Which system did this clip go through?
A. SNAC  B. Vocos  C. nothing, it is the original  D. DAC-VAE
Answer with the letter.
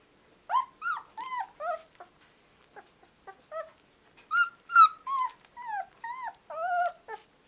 C